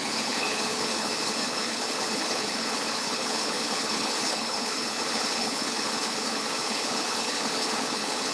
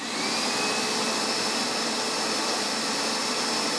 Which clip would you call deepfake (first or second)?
first